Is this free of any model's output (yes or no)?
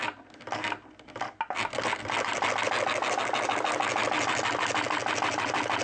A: yes